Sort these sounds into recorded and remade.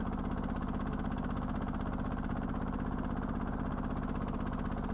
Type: recorded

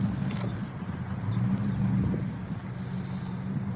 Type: recorded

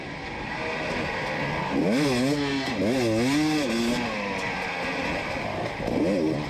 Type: recorded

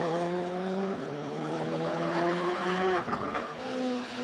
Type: remade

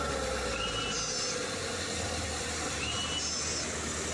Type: recorded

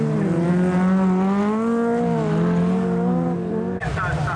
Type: recorded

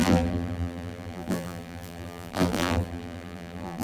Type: remade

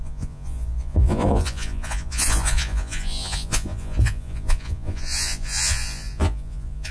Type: remade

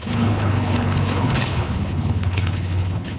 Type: remade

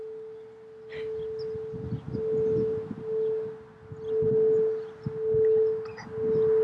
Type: recorded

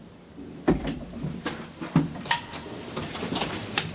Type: remade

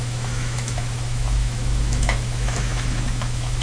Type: remade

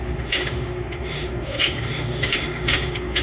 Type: remade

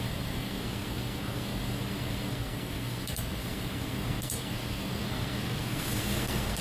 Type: remade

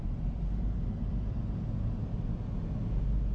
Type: recorded